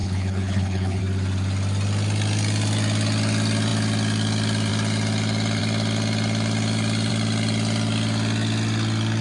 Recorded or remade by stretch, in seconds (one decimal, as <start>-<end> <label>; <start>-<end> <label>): 0.0-1.0 remade; 1.0-9.2 recorded